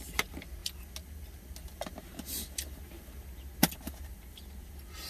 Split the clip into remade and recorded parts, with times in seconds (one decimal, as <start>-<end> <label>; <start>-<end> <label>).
0.0-5.1 recorded